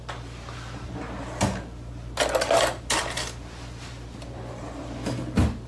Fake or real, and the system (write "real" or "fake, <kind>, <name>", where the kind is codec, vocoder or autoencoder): real